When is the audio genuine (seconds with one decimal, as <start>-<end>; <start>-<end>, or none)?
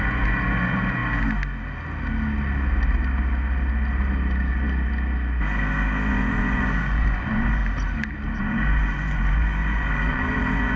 1.0-6.1; 7.6-8.4